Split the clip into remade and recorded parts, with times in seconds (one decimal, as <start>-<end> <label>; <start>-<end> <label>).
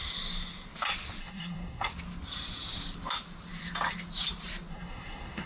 0.0-1.2 recorded; 1.2-1.9 remade; 1.9-4.7 recorded; 4.7-5.5 remade